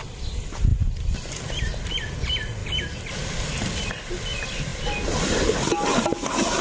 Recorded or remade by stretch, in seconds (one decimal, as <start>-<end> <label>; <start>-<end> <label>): 0.0-0.7 recorded; 0.7-1.9 remade; 1.9-2.6 recorded; 2.6-3.5 remade; 3.5-6.6 recorded